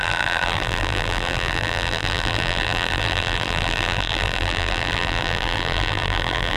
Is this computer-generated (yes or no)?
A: yes